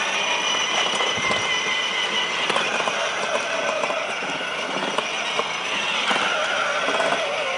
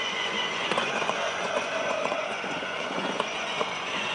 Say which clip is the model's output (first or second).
second